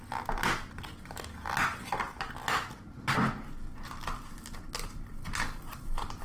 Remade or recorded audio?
recorded